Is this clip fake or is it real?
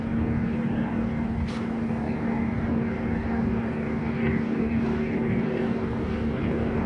fake